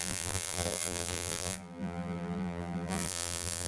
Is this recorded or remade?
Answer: remade